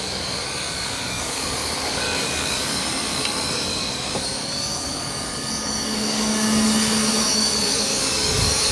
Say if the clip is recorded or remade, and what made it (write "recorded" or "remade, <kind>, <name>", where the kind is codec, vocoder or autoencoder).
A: remade, codec, DAC